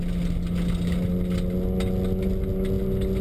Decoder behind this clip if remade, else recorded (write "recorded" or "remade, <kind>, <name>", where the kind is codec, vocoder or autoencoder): recorded